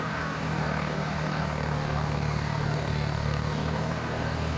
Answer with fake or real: fake